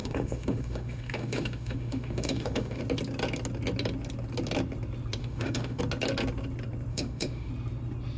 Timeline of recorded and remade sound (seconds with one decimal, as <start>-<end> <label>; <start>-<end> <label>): 0.0-2.8 remade; 2.8-5.2 recorded; 5.2-5.8 remade; 5.8-6.9 recorded; 6.9-7.5 remade; 7.5-8.2 recorded